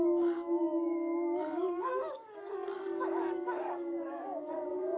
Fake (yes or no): yes